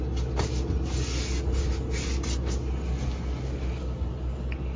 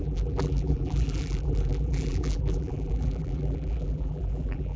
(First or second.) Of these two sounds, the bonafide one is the first